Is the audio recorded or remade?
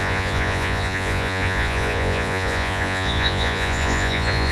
remade